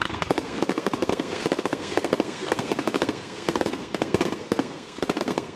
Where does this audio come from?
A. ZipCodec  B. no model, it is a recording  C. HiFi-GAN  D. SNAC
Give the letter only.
D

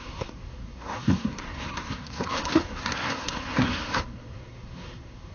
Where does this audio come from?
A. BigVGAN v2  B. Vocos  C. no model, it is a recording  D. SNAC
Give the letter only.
D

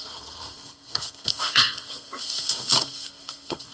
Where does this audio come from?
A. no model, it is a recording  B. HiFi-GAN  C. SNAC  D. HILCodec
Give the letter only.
C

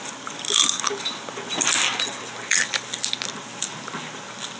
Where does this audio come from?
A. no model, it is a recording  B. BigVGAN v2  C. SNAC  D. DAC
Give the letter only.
A